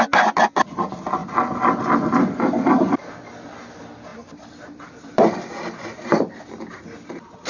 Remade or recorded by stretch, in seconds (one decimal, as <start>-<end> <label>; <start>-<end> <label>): 0.0-4.1 recorded; 4.1-5.4 remade; 5.4-7.5 recorded